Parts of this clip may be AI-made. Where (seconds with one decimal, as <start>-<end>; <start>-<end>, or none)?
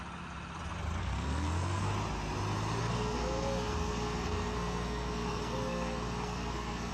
1.0-1.9; 2.8-6.9